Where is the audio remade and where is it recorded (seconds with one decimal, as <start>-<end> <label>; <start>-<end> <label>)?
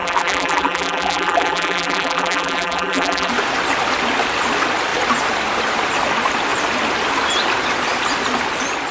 0.0-3.3 remade; 3.3-8.9 recorded